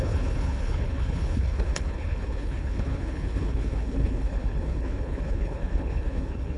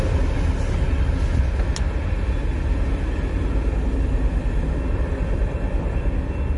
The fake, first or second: first